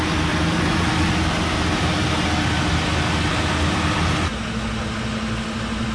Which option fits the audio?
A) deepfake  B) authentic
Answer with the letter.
B